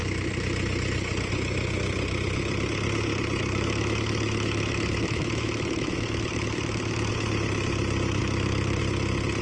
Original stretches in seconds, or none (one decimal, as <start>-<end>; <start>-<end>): 0.0-3.4; 7.1-8.2; 8.8-9.4